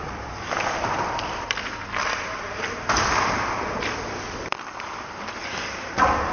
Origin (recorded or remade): remade